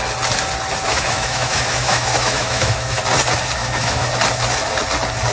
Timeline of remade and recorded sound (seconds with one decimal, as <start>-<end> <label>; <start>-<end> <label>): 0.0-0.9 recorded; 0.9-3.0 remade; 3.0-3.6 recorded; 3.6-4.1 remade; 4.1-5.3 recorded